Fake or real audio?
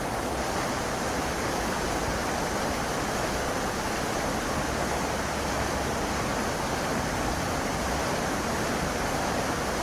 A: real